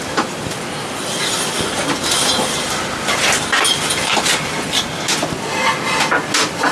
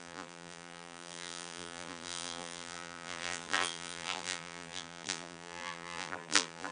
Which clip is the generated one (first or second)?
second